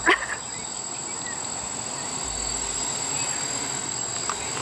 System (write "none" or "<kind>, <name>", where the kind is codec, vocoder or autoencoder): none